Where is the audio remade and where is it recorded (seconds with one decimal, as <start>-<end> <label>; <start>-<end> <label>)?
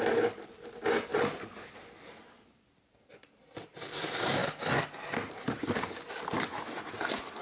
0.0-7.4 recorded